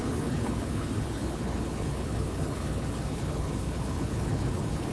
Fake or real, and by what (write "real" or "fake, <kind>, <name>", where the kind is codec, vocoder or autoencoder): fake, codec, HILCodec